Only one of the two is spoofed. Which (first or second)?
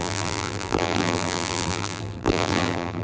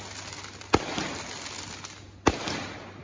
first